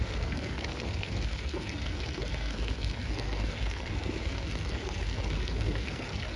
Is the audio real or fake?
fake